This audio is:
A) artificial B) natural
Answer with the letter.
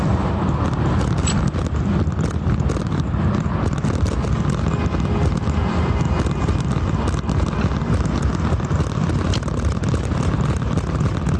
B